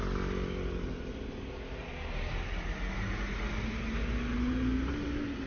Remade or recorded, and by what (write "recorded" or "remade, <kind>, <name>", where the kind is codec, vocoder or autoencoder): recorded